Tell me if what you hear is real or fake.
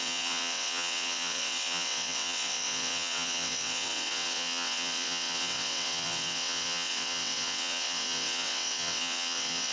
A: fake